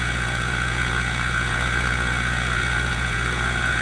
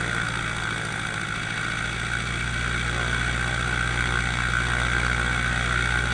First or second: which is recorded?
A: second